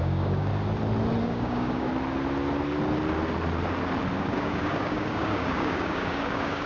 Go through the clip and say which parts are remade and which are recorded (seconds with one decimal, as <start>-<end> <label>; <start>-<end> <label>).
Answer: 0.0-0.5 remade; 0.5-1.2 recorded; 1.2-1.9 remade; 1.9-4.2 recorded; 4.2-6.7 remade